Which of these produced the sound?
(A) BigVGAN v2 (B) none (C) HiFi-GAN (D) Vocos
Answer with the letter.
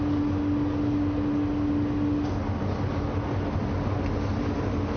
B